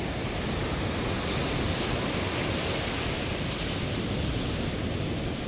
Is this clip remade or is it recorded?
recorded